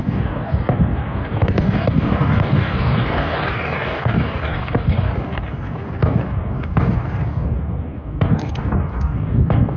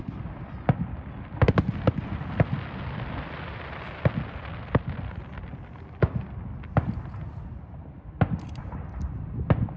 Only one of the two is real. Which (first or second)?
second